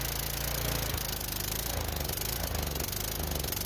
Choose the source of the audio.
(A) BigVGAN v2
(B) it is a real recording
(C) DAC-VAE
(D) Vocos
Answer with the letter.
B